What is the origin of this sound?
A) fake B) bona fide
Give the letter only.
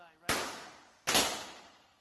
B